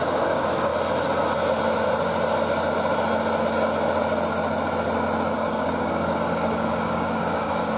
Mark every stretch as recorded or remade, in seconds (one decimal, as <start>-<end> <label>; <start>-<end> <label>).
0.0-0.7 remade; 0.7-5.3 recorded; 5.3-7.8 remade